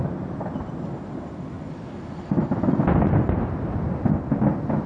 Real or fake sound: real